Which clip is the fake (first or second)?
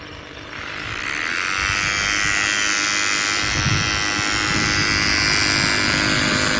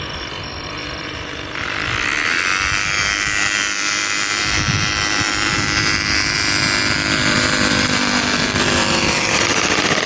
second